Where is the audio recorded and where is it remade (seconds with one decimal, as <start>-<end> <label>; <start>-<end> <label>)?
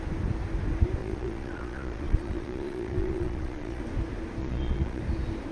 0.0-1.0 recorded; 1.0-3.8 remade; 3.8-4.4 recorded; 4.4-5.0 remade; 5.0-5.5 recorded